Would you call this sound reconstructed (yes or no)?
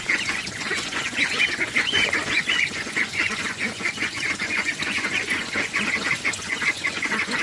yes